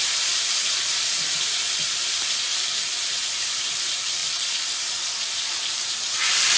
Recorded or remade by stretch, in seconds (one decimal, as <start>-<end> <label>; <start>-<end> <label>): 0.0-1.3 remade; 1.3-2.1 recorded; 2.1-6.6 remade

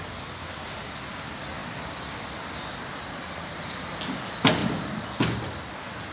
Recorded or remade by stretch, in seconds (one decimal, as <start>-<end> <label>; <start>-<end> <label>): 0.0-6.1 recorded

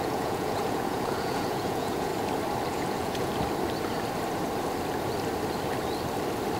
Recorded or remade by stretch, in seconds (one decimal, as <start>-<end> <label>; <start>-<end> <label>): 0.0-2.1 remade; 2.1-2.7 recorded; 2.7-3.3 remade; 3.3-6.6 recorded

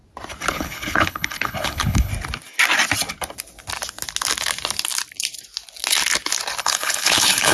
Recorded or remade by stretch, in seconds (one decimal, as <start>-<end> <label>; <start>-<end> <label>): 0.0-0.5 recorded; 0.5-2.1 remade; 2.1-6.6 recorded; 6.6-7.5 remade

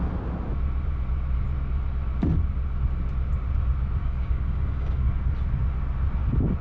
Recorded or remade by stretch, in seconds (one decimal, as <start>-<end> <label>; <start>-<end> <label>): 0.0-4.0 recorded; 4.0-5.2 remade; 5.2-6.6 recorded

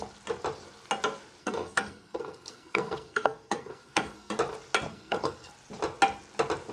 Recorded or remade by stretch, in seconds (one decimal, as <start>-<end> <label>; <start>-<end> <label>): 0.0-1.4 recorded; 1.4-4.3 remade; 4.3-4.9 recorded; 4.9-5.5 remade; 5.5-6.7 recorded

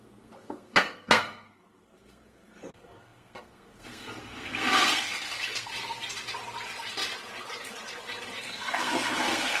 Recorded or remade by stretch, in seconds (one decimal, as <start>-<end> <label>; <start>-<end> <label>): 0.0-5.7 remade; 5.7-8.4 recorded; 8.4-9.6 remade